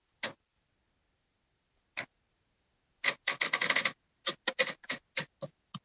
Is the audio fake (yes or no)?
no